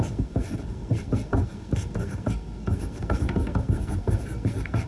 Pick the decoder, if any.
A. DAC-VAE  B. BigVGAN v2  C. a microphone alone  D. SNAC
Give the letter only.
D